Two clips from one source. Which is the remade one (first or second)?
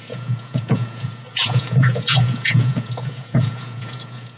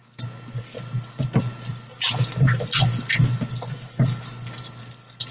first